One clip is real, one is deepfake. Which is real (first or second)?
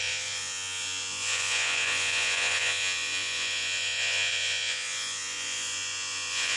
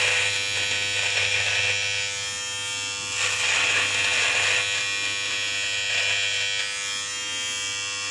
second